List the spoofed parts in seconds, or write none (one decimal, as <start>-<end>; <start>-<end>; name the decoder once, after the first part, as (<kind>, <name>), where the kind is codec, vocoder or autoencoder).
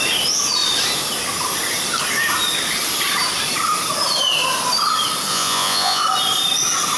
5.3-6.0 (vocoder, Vocos)